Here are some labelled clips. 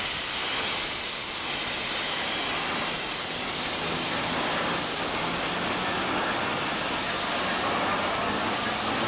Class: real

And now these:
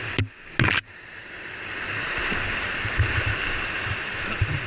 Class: real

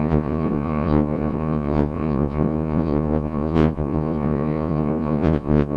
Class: fake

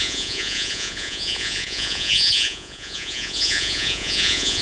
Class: fake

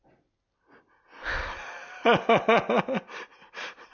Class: real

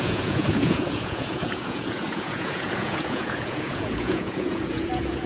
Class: fake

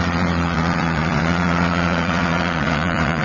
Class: fake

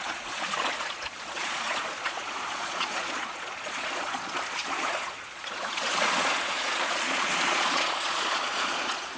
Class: fake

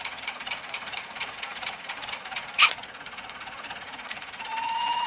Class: fake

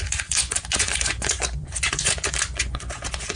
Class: fake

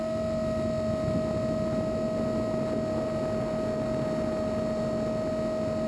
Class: real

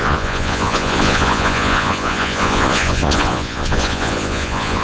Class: fake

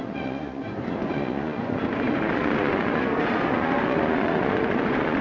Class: fake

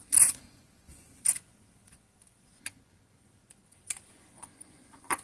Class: fake